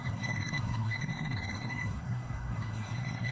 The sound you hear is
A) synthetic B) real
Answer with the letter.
A